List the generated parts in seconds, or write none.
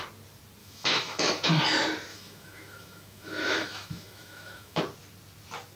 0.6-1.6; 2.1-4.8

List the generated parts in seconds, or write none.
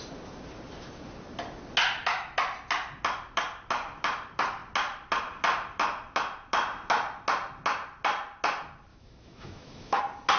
8.9-10.0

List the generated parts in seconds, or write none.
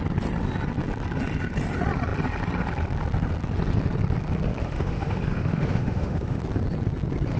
4.6-6.4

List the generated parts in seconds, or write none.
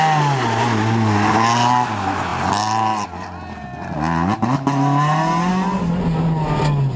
none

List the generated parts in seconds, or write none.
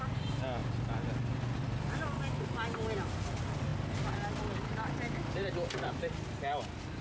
none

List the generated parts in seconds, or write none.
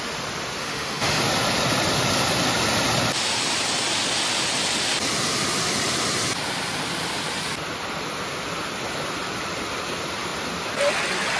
0.6-1.2